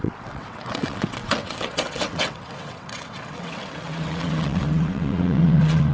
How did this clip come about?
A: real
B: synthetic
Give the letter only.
B